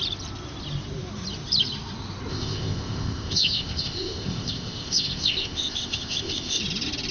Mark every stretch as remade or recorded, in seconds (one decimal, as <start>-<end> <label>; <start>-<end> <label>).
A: 0.0-2.3 recorded; 2.3-6.6 remade; 6.6-7.1 recorded